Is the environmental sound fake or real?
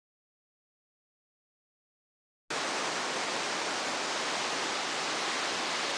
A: real